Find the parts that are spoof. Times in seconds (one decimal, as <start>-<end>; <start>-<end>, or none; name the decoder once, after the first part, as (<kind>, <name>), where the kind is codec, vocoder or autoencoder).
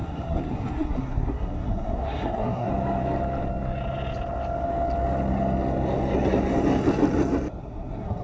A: 0.0-2.7 (codec, SNAC); 7.6-8.2